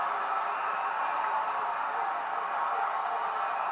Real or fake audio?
real